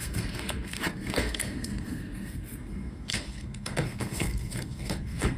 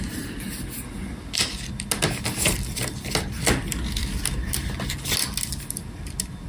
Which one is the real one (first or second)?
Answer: second